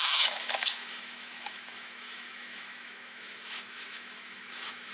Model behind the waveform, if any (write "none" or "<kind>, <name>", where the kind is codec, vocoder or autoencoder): autoencoder, DAC-VAE